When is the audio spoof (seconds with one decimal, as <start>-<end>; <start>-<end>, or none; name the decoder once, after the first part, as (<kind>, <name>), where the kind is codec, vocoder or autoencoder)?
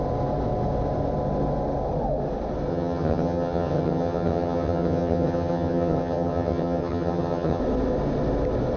2.7-7.6 (vocoder, HiFi-GAN)